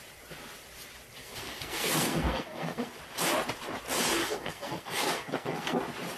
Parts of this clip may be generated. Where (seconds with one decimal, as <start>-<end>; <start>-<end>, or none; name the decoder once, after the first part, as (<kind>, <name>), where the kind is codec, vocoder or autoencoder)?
1.2-3.0 (codec, SNAC); 4.2-5.8